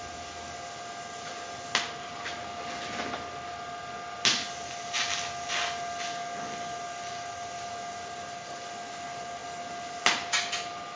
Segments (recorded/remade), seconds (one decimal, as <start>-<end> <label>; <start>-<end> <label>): 0.0-11.0 recorded